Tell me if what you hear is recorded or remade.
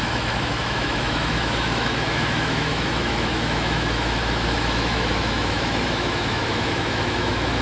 remade